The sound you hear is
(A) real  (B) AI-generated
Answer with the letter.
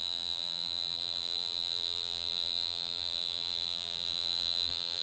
B